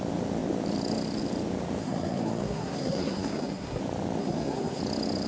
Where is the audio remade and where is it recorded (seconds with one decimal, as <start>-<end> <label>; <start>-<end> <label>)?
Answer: 0.0-1.8 recorded; 1.8-3.8 remade; 3.8-4.2 recorded; 4.2-4.8 remade; 4.8-5.3 recorded